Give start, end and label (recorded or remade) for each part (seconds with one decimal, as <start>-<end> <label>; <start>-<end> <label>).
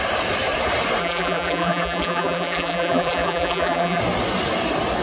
0.0-1.0 recorded; 1.0-4.0 remade; 4.0-5.0 recorded